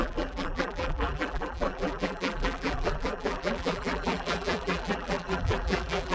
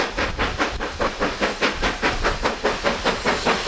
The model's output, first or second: first